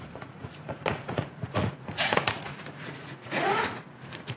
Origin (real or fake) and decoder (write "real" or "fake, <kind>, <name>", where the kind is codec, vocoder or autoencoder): fake, vocoder, Vocos